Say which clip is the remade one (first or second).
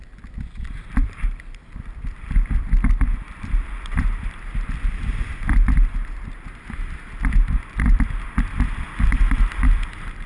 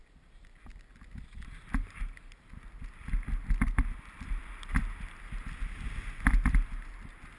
first